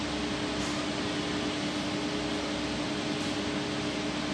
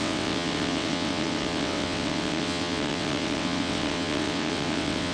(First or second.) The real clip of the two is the first